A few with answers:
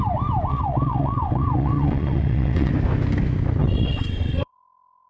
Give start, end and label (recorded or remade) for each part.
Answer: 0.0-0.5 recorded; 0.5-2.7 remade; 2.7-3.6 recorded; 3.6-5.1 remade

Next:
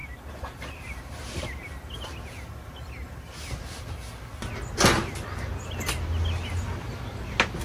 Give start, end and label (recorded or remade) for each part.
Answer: 0.0-1.0 remade; 1.0-7.6 recorded

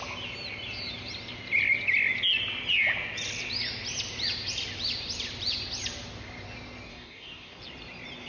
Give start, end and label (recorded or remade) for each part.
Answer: 0.0-6.9 recorded; 6.9-7.6 remade; 7.6-8.3 recorded

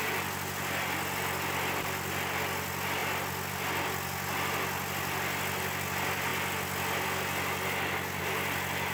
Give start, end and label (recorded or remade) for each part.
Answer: 0.0-8.9 recorded